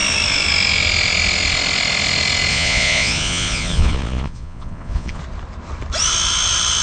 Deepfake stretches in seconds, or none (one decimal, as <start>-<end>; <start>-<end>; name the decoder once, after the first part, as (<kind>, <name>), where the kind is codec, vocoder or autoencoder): 2.5-5.2 (vocoder, Vocos)